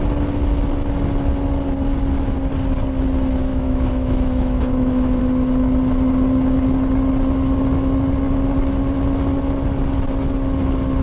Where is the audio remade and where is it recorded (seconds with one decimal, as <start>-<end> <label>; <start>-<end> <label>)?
0.0-3.5 recorded; 3.5-5.2 remade; 5.2-11.0 recorded